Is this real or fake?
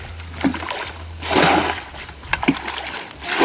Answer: real